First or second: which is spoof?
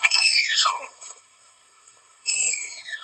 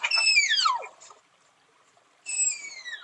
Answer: first